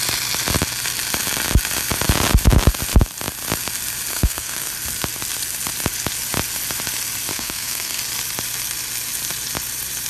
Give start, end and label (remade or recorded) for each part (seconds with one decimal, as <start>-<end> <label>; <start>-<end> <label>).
0.0-4.1 recorded; 4.1-4.7 remade; 4.7-7.3 recorded; 7.3-8.0 remade; 8.0-10.1 recorded